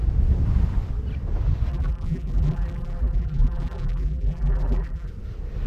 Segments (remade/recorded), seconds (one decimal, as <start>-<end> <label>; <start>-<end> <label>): 0.0-1.7 recorded; 1.7-5.1 remade; 5.1-5.7 recorded